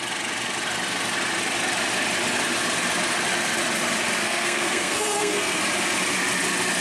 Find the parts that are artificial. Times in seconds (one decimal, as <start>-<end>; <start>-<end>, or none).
4.2-5.6